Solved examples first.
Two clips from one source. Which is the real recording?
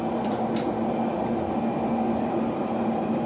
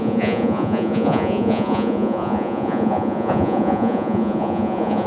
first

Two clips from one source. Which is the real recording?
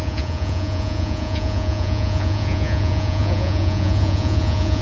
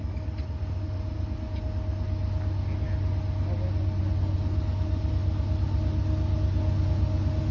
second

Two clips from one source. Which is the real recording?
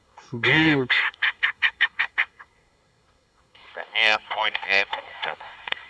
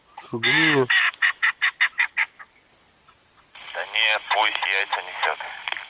second